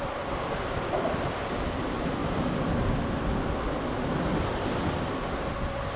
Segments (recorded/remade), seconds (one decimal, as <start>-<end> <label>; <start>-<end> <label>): 0.0-6.0 recorded